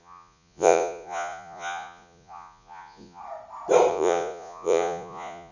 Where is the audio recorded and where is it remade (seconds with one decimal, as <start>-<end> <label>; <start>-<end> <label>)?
0.0-3.2 remade; 3.2-3.9 recorded; 3.9-5.5 remade